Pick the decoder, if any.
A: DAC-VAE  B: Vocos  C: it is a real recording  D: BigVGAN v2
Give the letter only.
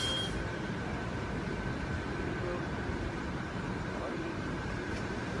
D